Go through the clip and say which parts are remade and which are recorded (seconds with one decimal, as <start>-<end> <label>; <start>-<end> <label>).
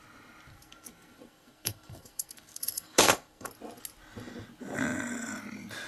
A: 0.0-0.5 recorded; 0.5-3.5 remade; 3.5-5.9 recorded